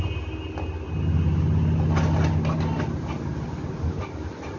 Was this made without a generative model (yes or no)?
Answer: yes